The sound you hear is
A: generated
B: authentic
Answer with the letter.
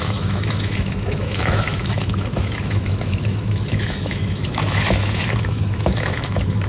A